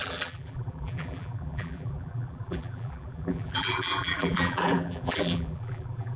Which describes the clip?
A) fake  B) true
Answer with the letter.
A